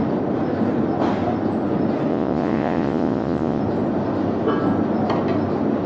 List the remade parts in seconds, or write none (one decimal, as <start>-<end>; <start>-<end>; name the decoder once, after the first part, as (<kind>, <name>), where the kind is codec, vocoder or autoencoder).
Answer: 2.1-3.6 (vocoder, Vocos)